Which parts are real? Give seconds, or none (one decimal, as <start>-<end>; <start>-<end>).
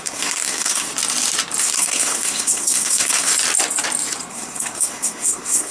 0.9-1.6; 3.3-4.3